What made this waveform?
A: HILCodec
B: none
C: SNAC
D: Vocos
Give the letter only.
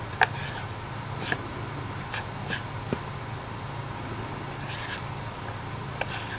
B